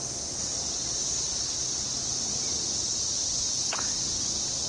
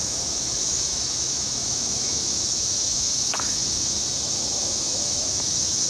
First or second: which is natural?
first